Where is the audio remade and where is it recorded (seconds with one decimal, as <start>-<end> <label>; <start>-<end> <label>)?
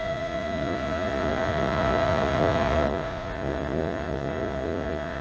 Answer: 0.0-5.2 remade